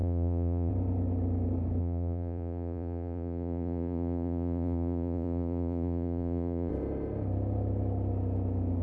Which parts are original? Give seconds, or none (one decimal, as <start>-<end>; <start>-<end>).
0.7-1.8; 6.7-8.8